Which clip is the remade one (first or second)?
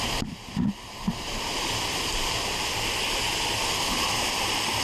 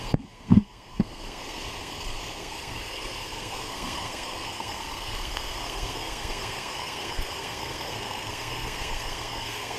second